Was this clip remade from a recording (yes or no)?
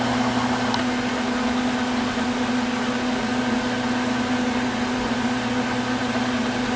no